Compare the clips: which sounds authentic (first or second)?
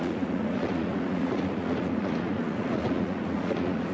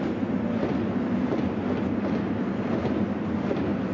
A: second